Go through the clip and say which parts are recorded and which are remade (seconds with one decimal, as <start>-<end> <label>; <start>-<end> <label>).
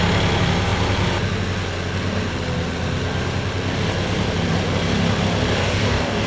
0.0-5.6 recorded; 5.6-6.3 remade